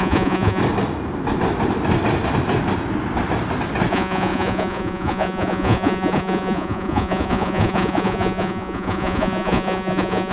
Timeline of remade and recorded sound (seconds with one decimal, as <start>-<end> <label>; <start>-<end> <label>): 0.0-0.6 remade; 0.6-3.9 recorded; 3.9-10.3 remade